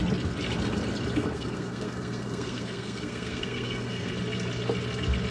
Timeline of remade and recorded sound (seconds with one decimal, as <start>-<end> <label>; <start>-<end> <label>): 0.0-1.2 recorded; 1.2-4.1 remade; 4.1-5.3 recorded